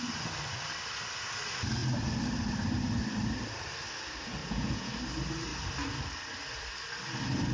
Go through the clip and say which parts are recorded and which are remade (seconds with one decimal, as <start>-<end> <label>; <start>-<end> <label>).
0.0-4.4 recorded; 4.4-4.9 remade; 4.9-7.5 recorded

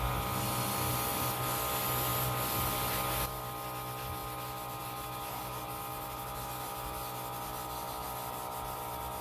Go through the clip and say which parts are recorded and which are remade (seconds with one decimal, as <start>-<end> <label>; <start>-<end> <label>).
0.0-9.2 recorded

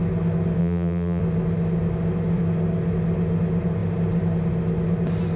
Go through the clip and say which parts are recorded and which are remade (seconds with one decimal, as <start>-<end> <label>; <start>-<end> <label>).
0.0-0.6 recorded; 0.6-1.2 remade; 1.2-5.4 recorded

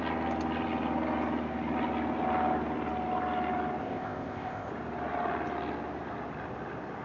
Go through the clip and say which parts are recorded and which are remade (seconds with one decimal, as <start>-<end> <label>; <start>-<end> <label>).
0.0-3.8 recorded; 3.8-4.7 remade; 4.7-7.0 recorded

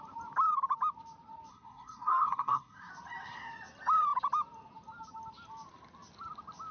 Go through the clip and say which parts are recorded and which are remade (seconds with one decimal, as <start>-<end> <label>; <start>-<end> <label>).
0.0-1.5 recorded; 1.5-2.9 remade; 2.9-6.7 recorded

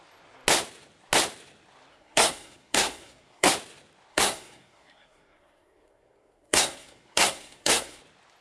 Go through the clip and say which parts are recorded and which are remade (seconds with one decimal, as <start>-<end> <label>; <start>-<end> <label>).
0.0-1.9 recorded; 1.9-3.5 remade; 3.5-4.1 recorded; 4.1-8.0 remade; 8.0-8.4 recorded

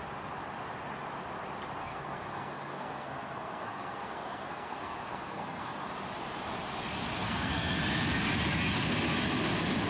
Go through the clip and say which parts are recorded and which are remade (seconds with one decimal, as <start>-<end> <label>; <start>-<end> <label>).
0.0-1.8 recorded; 1.8-5.9 remade; 5.9-7.2 recorded; 7.2-7.8 remade; 7.8-9.9 recorded

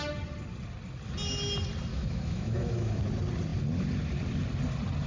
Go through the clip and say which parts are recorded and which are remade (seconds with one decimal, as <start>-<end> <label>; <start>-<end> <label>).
0.0-1.9 recorded; 1.9-3.0 remade; 3.0-5.1 recorded